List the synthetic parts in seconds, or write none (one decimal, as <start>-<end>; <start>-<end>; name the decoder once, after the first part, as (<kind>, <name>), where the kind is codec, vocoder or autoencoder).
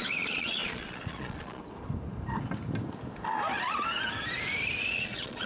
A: 0.0-1.6 (vocoder, Vocos); 4.9-5.5